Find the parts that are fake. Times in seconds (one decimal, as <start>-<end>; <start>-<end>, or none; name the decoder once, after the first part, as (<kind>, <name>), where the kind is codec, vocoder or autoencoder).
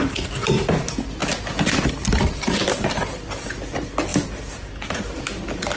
none